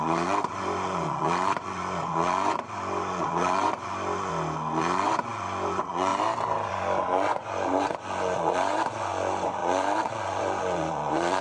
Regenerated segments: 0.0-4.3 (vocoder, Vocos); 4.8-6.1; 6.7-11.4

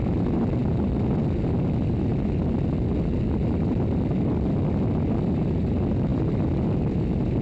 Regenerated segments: none